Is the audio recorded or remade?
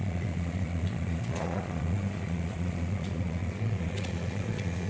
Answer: remade